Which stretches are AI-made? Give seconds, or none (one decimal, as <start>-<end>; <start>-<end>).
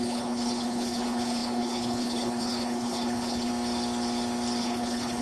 0.0-3.5; 4.6-5.2